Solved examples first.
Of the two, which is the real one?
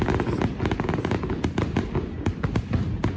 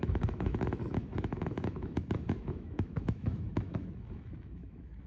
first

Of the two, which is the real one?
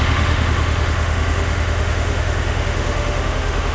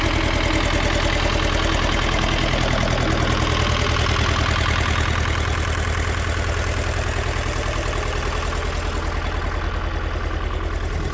second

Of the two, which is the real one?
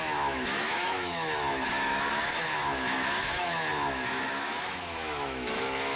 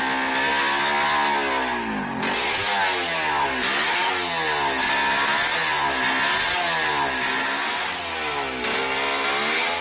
second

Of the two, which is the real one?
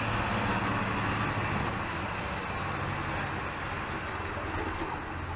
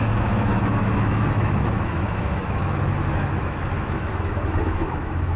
first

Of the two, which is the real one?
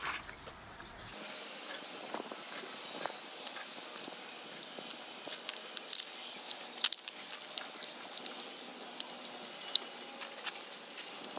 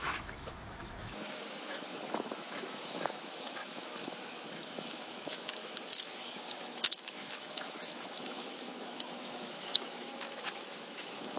first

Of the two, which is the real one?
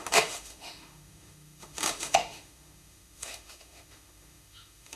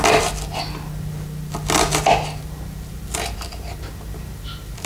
second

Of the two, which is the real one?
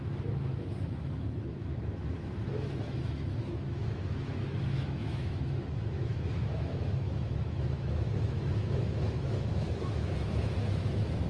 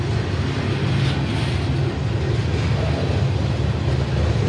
second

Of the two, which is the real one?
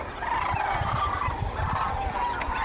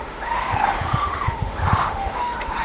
first